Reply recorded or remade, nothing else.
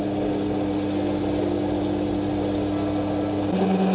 recorded